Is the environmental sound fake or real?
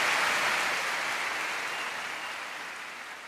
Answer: real